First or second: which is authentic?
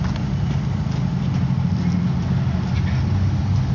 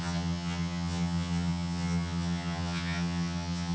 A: first